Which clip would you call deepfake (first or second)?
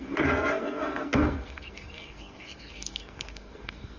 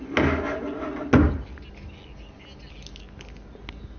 first